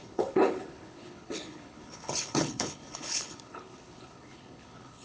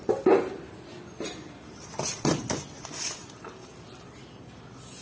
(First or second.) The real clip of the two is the second